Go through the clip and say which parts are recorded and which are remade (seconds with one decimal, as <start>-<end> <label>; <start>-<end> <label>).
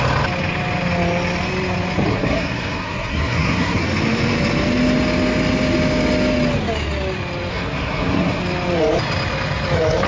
0.0-2.1 recorded; 2.1-3.8 remade; 3.8-7.5 recorded; 7.5-8.4 remade; 8.4-10.1 recorded